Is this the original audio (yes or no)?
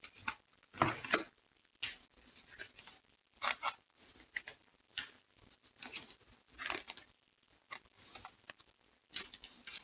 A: yes